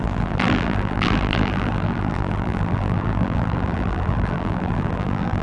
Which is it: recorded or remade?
remade